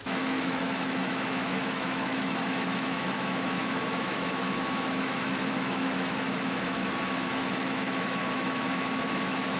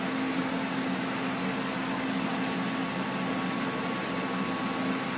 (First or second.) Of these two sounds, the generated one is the first